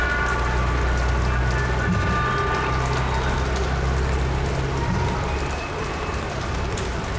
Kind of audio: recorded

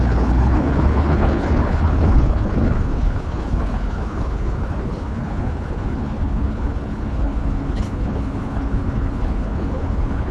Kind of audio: remade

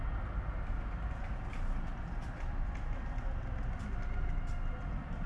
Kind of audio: recorded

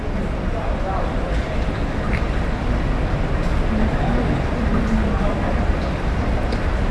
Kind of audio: recorded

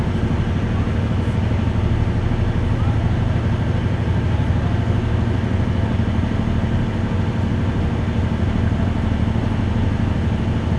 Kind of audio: recorded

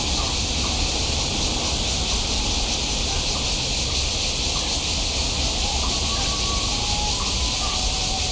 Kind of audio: recorded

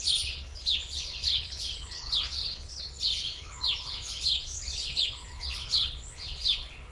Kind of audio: remade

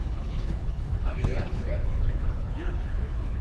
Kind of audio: remade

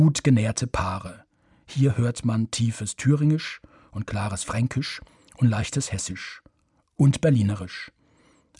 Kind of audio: recorded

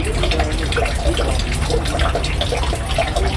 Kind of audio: recorded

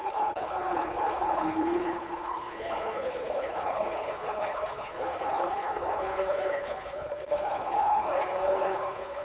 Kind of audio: remade